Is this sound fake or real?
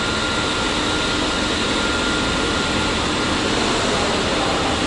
real